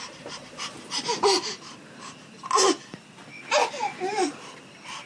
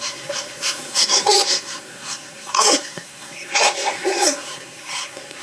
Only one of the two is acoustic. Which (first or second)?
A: first